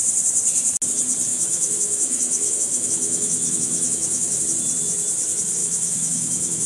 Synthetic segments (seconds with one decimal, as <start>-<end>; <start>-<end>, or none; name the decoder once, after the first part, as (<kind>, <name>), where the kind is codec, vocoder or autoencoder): 1.3-4.4 (autoencoder, DAC-VAE); 5.6-6.7